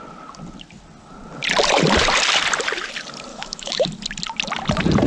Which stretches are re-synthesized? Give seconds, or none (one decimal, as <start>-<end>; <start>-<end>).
3.3-3.9

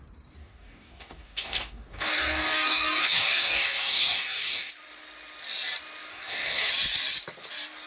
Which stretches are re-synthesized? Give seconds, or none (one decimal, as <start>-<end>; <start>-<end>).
0.4-4.7; 6.1-6.7